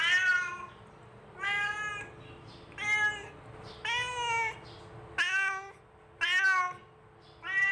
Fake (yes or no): no